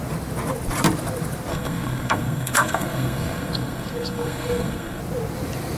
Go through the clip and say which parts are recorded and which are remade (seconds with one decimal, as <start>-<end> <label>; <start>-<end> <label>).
0.0-1.5 recorded; 1.5-5.0 remade; 5.0-5.8 recorded